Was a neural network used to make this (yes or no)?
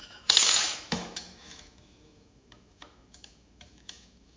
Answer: yes